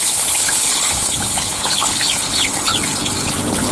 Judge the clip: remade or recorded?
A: remade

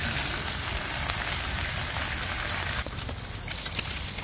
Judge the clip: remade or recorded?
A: recorded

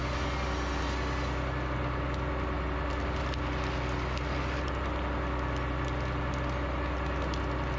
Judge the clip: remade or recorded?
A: recorded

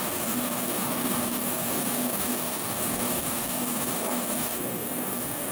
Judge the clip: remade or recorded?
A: remade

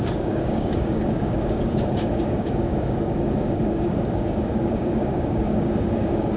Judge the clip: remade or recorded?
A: remade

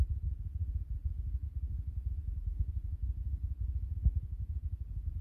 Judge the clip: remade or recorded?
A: recorded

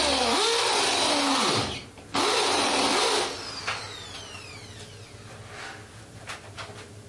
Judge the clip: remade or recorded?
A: recorded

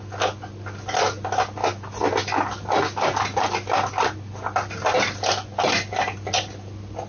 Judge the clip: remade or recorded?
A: recorded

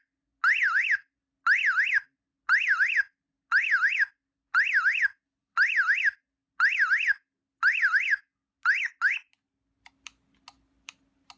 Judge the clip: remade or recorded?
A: recorded